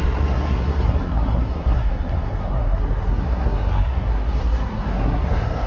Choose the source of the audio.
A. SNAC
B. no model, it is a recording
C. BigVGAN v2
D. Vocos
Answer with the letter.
A